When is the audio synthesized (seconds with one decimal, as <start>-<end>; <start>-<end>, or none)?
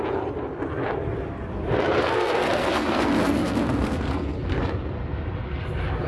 2.0-4.6